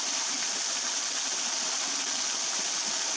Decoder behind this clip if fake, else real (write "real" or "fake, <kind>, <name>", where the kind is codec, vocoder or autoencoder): real